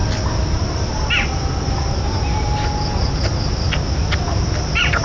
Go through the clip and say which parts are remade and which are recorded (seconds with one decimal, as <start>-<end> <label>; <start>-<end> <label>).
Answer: 0.0-5.0 recorded